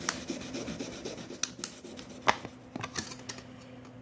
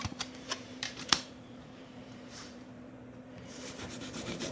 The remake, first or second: second